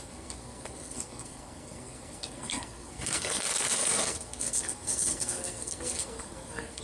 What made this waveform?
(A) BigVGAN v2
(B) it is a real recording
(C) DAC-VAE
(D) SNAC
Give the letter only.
D